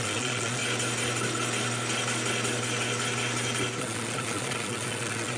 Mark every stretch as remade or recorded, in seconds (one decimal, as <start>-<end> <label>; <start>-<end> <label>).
0.0-0.6 remade; 0.6-3.8 recorded; 3.8-5.4 remade